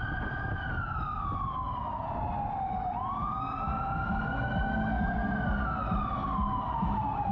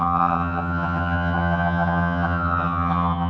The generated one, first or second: second